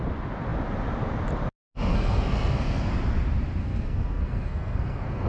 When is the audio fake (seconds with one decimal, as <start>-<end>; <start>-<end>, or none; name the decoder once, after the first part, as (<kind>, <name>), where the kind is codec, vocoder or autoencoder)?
1.9-2.8 (codec, SNAC); 3.6-5.3